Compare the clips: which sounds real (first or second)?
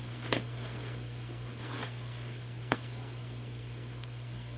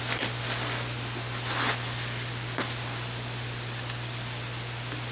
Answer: second